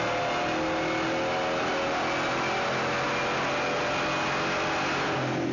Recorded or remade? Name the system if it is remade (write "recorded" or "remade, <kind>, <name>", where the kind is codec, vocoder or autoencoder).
recorded